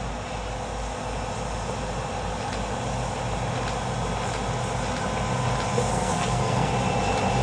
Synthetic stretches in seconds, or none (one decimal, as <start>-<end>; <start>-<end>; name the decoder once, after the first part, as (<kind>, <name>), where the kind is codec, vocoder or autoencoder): 5.9-6.7 (codec, SNAC)